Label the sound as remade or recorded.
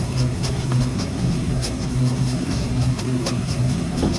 remade